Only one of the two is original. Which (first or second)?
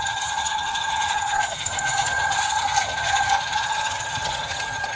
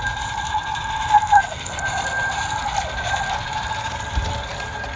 second